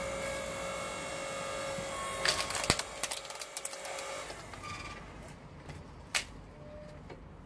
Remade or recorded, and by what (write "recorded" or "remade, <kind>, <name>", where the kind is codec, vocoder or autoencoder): recorded